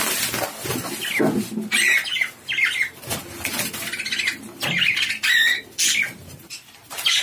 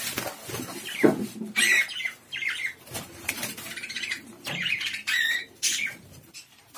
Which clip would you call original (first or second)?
first